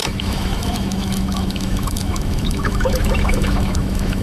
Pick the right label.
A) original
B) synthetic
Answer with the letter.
B